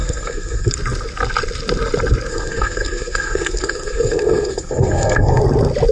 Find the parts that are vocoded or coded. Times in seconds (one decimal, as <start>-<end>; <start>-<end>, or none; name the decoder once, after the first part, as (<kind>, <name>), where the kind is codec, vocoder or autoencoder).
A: 0.0-0.7 (codec, SNAC); 2.3-5.4